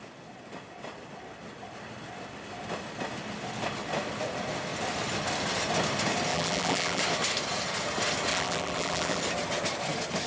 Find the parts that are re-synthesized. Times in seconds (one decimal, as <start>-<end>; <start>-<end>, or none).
6.3-7.0; 8.3-9.2